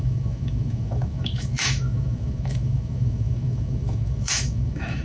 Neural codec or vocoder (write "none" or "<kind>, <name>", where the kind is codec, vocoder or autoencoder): autoencoder, DAC-VAE